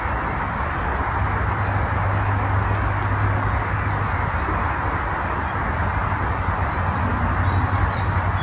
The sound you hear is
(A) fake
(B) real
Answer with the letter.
B